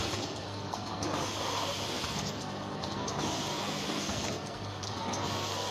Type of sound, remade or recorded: remade